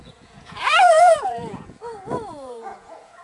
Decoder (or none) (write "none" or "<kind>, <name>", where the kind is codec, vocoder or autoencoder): vocoder, Vocos